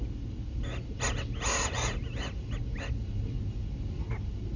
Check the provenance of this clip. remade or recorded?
recorded